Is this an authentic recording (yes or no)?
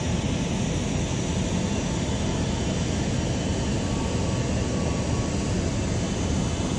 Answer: yes